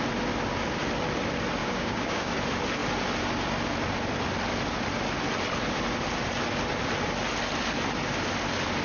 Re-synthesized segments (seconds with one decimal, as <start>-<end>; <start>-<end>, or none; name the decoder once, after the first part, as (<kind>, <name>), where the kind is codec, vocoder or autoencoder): 1.6-2.3 (codec, DAC)